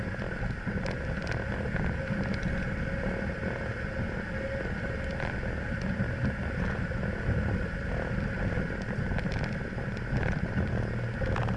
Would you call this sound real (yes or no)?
yes